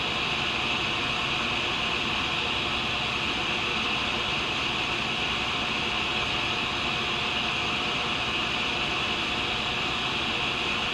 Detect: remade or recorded recorded